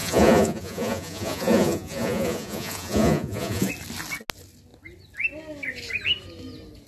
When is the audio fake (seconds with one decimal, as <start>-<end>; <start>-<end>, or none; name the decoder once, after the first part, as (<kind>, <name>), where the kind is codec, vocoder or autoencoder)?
0.0-3.7 (vocoder, Vocos)